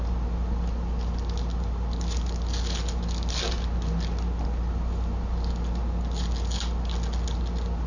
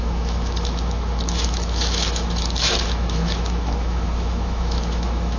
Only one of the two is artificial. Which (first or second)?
second